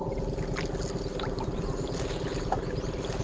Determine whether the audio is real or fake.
real